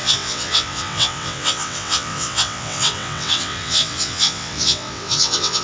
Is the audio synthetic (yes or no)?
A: yes